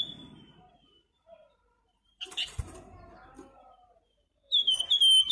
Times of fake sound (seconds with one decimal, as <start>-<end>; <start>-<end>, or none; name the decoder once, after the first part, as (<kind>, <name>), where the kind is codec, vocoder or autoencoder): 1.4-4.6 (vocoder, BigVGAN v2)